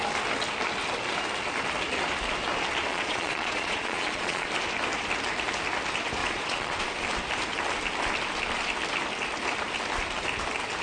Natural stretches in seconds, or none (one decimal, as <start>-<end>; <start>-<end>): 0.0-2.9; 4.5-6.2; 6.8-10.8